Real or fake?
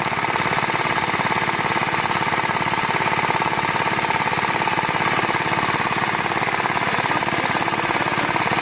real